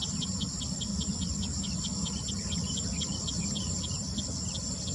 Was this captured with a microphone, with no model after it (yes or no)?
yes